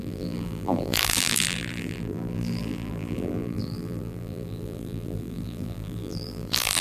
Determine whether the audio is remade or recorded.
remade